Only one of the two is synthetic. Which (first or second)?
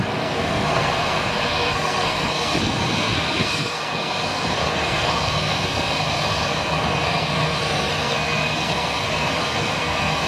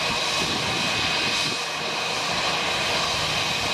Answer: first